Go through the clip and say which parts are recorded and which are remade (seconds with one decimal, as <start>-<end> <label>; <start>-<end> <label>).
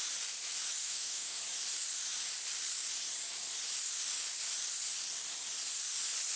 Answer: 0.0-0.8 recorded; 0.8-1.4 remade; 1.4-6.4 recorded